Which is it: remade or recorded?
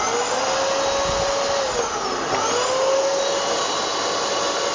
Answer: recorded